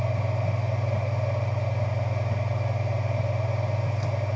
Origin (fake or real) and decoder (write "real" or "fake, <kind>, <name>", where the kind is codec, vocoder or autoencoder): real